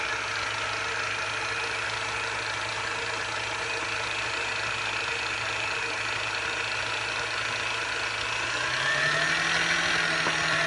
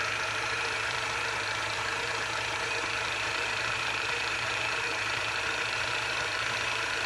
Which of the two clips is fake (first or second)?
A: second